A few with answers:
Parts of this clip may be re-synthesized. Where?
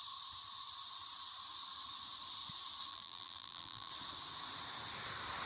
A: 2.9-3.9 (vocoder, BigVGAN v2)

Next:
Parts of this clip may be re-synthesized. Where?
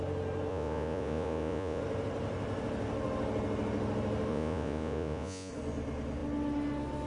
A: 0.5-1.8 (vocoder, Vocos); 4.3-5.5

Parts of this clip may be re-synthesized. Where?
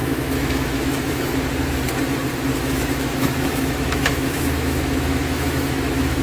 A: 0.0-1.3 (autoencoder, DAC-VAE); 2.5-6.2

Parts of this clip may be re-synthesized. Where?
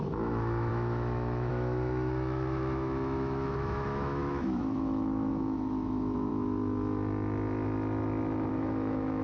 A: 0.0-6.3 (autoencoder, DAC-VAE); 8.5-9.2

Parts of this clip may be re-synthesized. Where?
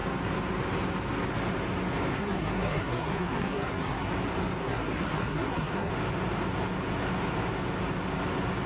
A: 2.1-4.1 (codec, SNAC); 4.6-5.9